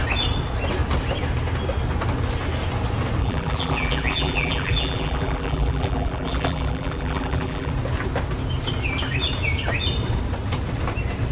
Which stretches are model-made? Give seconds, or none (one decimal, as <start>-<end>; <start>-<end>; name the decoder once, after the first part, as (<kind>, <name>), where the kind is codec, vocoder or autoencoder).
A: 3.2-7.7 (vocoder, BigVGAN v2)